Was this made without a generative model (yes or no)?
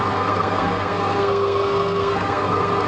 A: no